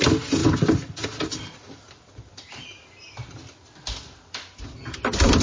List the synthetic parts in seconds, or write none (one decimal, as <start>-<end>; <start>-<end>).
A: none